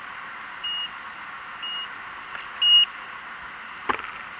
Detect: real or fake real